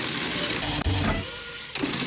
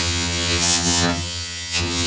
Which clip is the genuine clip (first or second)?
first